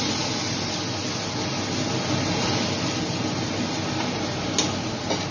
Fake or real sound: real